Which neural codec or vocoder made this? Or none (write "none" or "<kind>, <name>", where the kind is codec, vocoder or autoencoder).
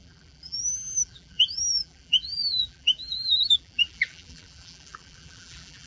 vocoder, BigVGAN v2